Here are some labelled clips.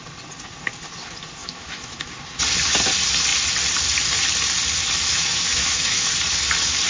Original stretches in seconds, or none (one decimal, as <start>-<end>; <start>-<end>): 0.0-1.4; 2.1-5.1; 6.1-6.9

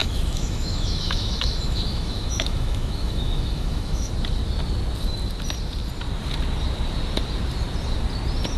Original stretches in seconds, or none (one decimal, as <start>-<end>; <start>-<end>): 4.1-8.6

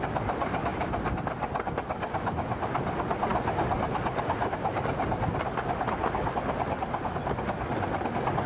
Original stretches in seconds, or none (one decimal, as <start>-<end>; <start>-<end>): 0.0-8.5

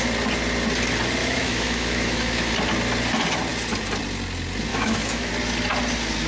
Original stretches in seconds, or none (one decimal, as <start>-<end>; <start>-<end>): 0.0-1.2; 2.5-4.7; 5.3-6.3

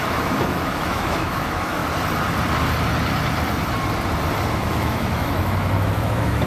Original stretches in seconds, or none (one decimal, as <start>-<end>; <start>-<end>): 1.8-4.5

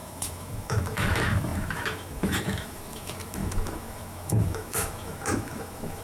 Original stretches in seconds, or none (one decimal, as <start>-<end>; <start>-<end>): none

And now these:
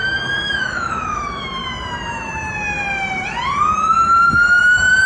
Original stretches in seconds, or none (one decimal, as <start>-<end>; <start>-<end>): 1.6-5.1